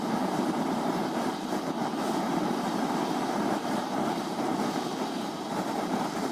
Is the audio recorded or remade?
remade